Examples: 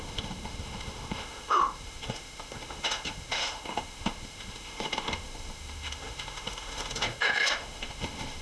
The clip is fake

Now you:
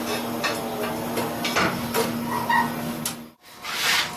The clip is real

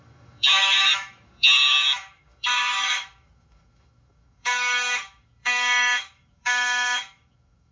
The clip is fake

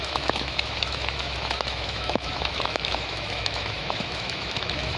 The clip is fake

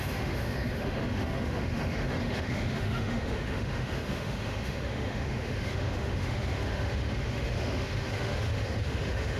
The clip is fake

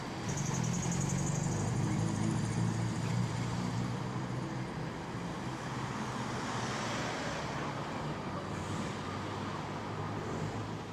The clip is real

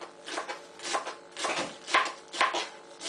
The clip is real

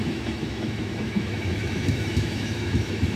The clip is fake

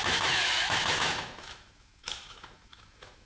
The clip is fake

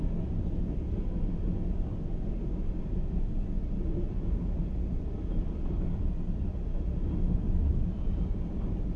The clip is real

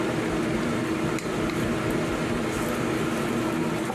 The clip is real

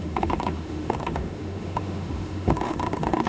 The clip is fake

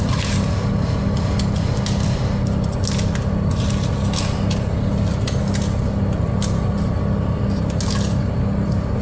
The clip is real